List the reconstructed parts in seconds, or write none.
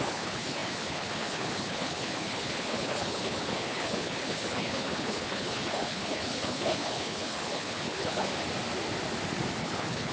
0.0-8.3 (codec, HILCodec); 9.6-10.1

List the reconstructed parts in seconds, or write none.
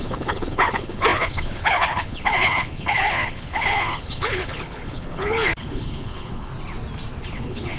0.0-6.5 (codec, HILCodec); 7.2-7.8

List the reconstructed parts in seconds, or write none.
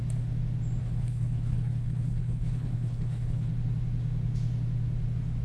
0.8-3.5 (codec, HILCodec)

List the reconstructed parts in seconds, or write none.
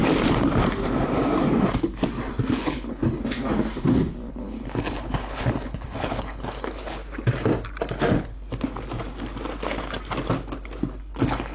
2.5-3.0 (codec, HILCodec); 4.3-7.0; 11.0-11.5